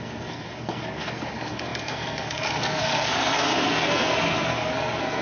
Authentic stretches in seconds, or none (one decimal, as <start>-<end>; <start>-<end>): none